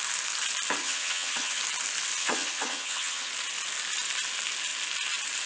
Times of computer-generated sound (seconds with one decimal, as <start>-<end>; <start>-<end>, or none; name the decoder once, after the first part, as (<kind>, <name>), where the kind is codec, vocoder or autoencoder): 0.8-1.6 (vocoder, HiFi-GAN); 2.2-3.3